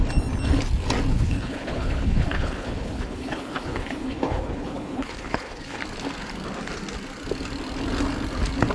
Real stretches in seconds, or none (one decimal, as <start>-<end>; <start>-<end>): 0.0-1.1; 5.8-8.7